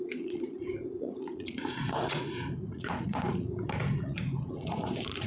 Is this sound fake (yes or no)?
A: yes